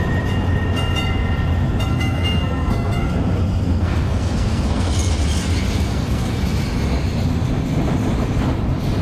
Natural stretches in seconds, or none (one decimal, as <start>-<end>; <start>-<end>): 0.0-1.9; 3.1-3.7; 5.1-5.9; 6.4-9.0